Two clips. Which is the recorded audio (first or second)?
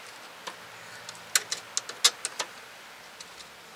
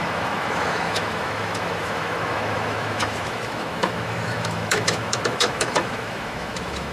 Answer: first